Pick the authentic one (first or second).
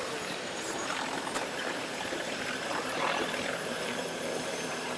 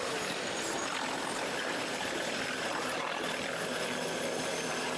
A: second